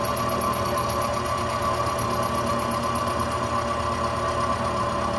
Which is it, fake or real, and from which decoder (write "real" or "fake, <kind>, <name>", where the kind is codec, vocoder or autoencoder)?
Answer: real